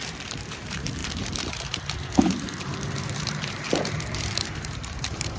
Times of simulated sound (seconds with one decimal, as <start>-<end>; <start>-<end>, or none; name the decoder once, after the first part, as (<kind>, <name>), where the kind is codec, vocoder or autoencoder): 0.0-5.4 (vocoder, BigVGAN v2)